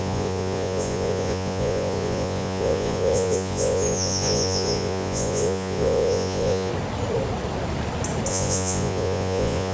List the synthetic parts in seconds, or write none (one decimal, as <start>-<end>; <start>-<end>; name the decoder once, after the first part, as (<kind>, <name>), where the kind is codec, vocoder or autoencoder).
0.0-6.7 (vocoder, Vocos); 8.3-9.7